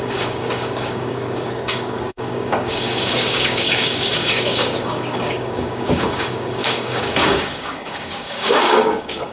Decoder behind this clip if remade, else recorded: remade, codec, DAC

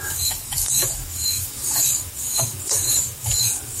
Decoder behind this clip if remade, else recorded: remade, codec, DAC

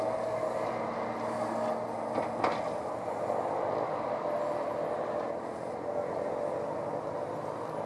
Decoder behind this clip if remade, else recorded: recorded